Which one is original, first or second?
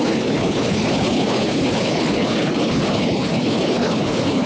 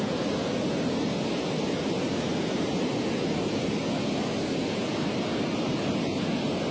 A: second